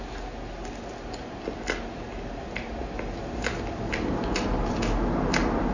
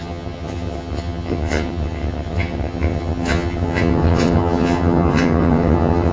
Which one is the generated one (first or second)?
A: second